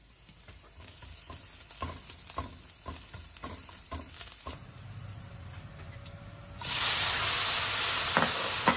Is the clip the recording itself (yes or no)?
yes